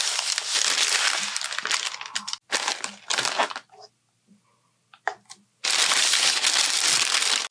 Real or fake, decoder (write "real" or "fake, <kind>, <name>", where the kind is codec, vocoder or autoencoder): real